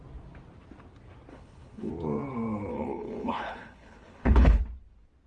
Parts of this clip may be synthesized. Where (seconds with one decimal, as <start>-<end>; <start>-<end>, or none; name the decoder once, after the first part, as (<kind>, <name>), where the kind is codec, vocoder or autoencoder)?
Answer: 1.3-1.9 (codec, HILCodec); 2.7-4.6